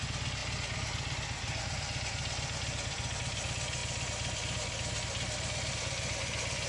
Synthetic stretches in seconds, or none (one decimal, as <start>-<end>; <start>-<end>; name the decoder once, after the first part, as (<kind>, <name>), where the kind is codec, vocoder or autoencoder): none